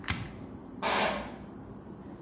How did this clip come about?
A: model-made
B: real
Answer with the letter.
B